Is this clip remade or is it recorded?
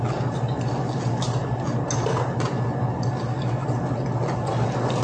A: recorded